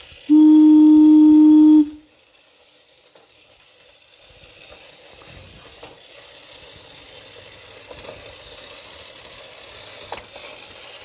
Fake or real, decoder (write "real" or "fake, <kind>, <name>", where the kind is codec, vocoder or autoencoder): real